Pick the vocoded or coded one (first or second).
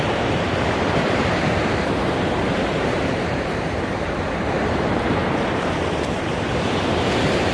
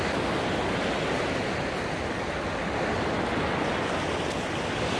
first